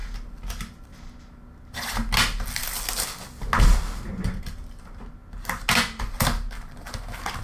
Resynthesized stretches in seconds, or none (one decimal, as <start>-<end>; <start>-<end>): none